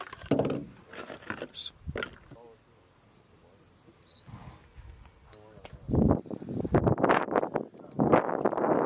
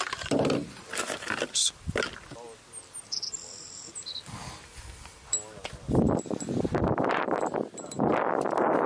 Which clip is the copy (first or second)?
second